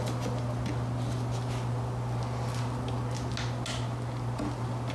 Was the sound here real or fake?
real